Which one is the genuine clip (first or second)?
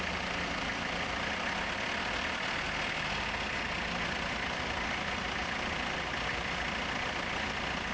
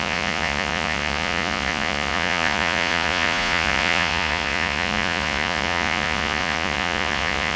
first